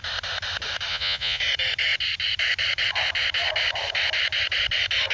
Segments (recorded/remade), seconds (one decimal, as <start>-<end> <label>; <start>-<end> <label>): 0.0-0.9 recorded; 0.9-1.4 remade; 1.4-5.1 recorded